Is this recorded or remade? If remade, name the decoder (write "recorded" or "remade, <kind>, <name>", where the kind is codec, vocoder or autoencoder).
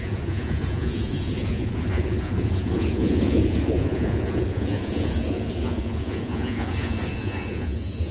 remade, vocoder, Vocos